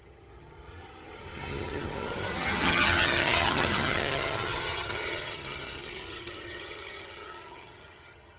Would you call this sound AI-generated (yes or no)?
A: yes